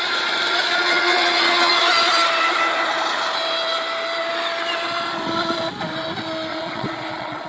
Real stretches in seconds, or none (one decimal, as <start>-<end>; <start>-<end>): 0.0-0.6; 1.7-6.5